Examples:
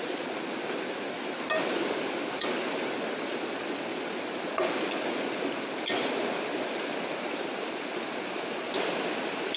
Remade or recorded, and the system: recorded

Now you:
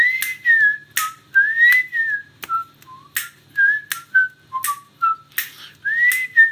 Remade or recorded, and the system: recorded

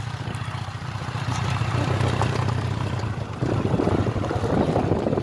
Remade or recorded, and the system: remade, vocoder, BigVGAN v2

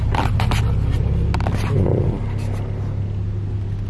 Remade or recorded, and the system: recorded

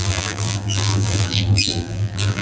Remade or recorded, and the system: remade, vocoder, BigVGAN v2